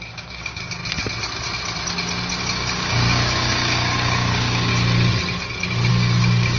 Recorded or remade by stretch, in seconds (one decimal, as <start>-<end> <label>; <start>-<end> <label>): 0.0-0.8 remade; 0.8-2.4 recorded; 2.4-4.7 remade; 4.7-5.9 recorded; 5.9-6.6 remade